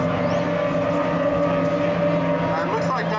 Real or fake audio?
real